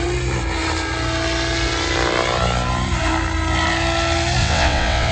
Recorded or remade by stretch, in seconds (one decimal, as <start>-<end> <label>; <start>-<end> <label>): 0.0-4.4 recorded; 4.4-5.1 remade